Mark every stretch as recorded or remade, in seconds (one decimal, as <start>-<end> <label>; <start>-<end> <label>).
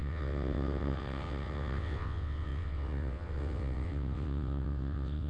0.0-5.3 remade